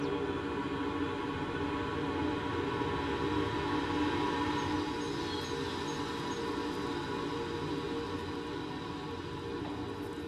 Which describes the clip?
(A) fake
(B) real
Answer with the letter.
B